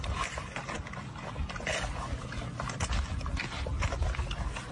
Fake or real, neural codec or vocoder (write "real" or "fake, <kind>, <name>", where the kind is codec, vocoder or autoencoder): real